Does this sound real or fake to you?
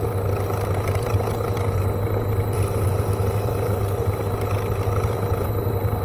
real